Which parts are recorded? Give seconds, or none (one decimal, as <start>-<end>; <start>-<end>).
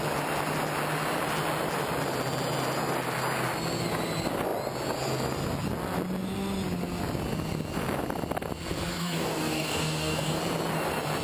0.0-8.9; 10.4-11.2